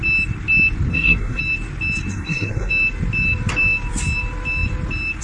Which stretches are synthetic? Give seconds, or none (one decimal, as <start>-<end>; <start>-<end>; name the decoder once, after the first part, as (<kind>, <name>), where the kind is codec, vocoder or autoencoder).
0.9-1.4 (codec, SNAC); 2.1-2.7